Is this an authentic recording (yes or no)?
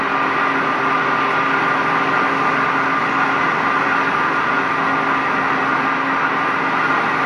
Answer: yes